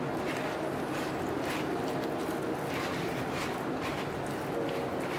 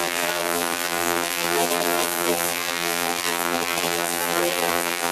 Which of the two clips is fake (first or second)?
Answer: second